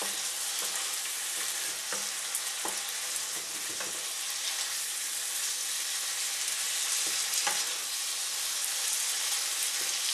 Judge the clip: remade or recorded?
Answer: recorded